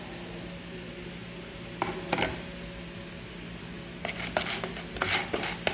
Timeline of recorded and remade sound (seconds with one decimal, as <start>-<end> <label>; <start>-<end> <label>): 0.0-5.7 recorded